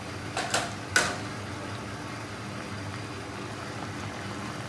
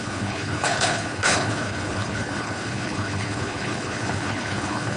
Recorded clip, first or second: first